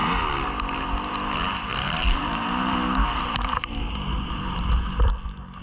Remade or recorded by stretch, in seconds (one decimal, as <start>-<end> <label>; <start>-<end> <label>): 0.0-1.7 recorded; 1.7-5.1 remade; 5.1-5.6 recorded